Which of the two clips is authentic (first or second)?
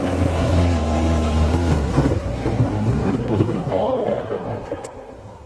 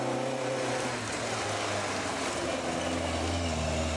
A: second